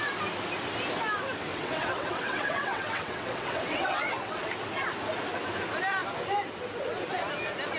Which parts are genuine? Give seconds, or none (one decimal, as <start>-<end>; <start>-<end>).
0.0-1.5; 4.5-7.8